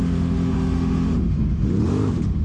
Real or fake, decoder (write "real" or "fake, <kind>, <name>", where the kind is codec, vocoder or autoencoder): fake, autoencoder, DAC-VAE